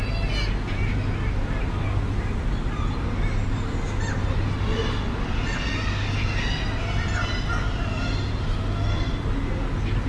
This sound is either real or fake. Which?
real